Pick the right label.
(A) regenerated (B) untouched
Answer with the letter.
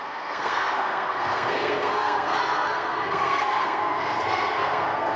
A